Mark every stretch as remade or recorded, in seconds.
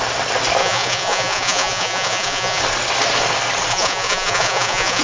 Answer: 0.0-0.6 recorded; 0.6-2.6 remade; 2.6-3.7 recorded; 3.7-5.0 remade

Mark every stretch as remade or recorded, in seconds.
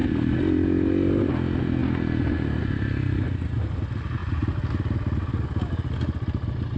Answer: 0.0-6.8 recorded